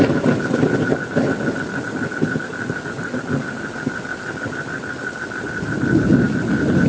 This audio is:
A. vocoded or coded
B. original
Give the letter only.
B